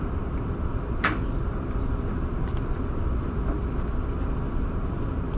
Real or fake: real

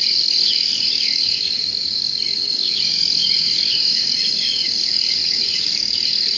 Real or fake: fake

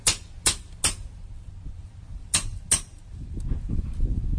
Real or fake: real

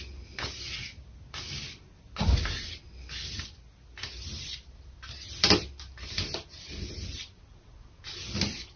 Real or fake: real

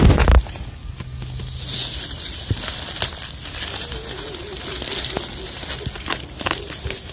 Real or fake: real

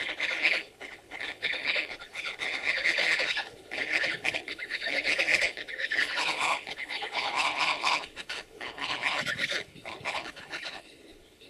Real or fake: fake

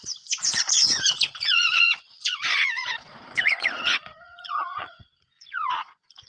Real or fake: fake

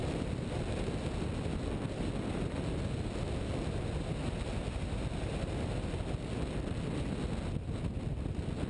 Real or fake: real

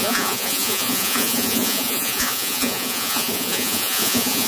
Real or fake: fake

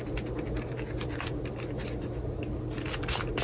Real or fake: real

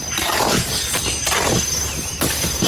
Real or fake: real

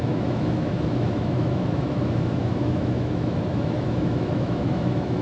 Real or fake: fake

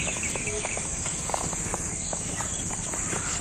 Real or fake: fake